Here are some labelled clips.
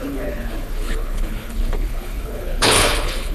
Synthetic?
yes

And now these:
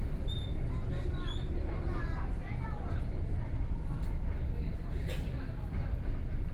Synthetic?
no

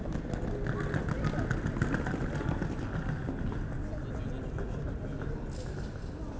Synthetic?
no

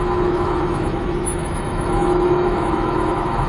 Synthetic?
yes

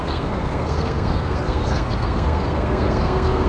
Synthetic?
yes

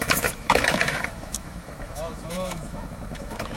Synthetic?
yes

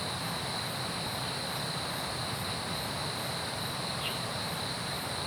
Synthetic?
no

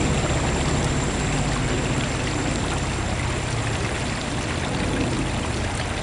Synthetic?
no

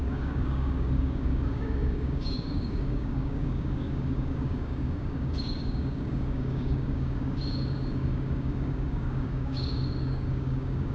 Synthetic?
yes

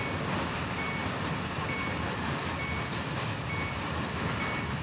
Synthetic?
no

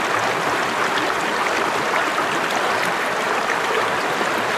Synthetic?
no